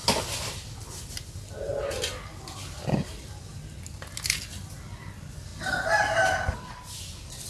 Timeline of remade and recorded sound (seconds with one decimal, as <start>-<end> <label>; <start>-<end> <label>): 0.0-7.5 recorded

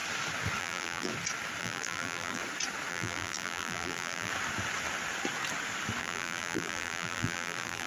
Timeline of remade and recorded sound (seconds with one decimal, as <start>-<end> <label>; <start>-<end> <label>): 0.0-0.6 recorded; 0.6-1.1 remade; 1.1-1.6 recorded; 1.6-2.4 remade; 2.4-2.9 recorded; 2.9-4.3 remade; 4.3-6.0 recorded; 6.0-7.9 remade

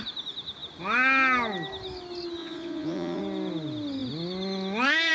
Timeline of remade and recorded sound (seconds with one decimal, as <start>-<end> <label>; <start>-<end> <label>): 0.0-2.4 recorded; 2.4-3.2 remade; 3.2-5.1 recorded

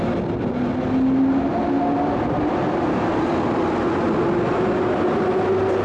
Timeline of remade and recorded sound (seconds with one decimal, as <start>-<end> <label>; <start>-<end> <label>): 0.0-5.8 recorded

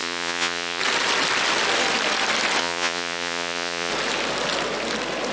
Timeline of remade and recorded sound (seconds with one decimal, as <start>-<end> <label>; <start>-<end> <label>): 0.0-0.8 remade; 0.8-2.6 recorded; 2.6-3.9 remade; 3.9-5.3 recorded

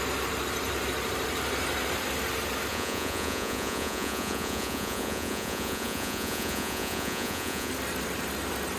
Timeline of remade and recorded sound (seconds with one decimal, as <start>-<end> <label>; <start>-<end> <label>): 0.0-2.7 recorded; 2.7-7.7 remade; 7.7-8.8 recorded

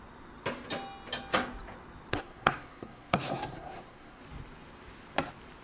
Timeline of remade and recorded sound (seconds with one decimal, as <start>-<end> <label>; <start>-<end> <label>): 0.0-2.1 recorded; 2.1-4.2 remade; 4.2-5.6 recorded

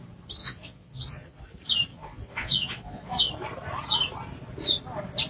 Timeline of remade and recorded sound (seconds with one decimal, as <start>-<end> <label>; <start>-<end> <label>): 0.0-0.4 recorded; 0.4-1.4 remade; 1.4-1.9 recorded; 1.9-3.3 remade; 3.3-5.3 recorded